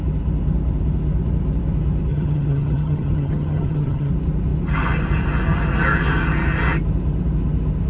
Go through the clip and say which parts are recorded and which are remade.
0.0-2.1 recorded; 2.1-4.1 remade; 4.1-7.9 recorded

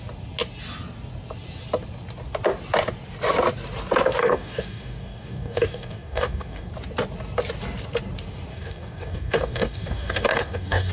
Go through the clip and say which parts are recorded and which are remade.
0.0-4.2 recorded; 4.2-6.7 remade; 6.7-8.5 recorded; 8.5-10.9 remade

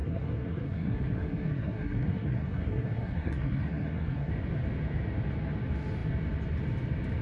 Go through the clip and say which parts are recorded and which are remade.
0.0-4.3 remade; 4.3-7.2 recorded

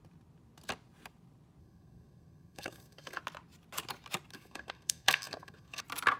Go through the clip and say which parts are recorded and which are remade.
0.0-1.6 recorded; 1.6-3.2 remade; 3.2-4.3 recorded; 4.3-5.8 remade; 5.8-6.2 recorded

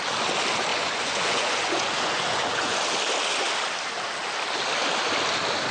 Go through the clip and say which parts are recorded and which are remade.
0.0-0.7 recorded; 0.7-2.8 remade; 2.8-5.7 recorded

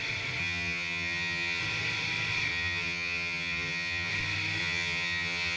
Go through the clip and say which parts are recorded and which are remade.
0.0-0.4 recorded; 0.4-1.6 remade; 1.6-2.5 recorded; 2.5-4.1 remade; 4.1-4.6 recorded; 4.6-5.6 remade